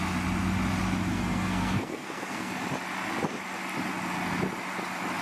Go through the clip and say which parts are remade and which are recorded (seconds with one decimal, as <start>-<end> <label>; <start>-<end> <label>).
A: 0.0-1.1 recorded; 1.1-2.5 remade; 2.5-5.2 recorded